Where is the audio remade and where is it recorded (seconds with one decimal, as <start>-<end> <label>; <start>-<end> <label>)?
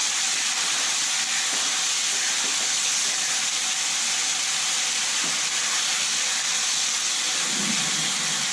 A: 0.0-8.5 recorded